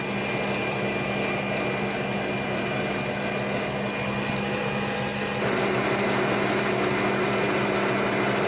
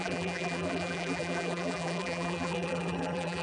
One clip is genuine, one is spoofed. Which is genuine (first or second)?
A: first